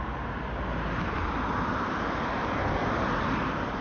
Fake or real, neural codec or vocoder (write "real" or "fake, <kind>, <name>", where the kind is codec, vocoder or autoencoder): real